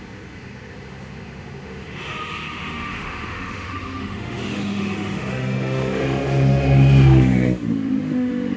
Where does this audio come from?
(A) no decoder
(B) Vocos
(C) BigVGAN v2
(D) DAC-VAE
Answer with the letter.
D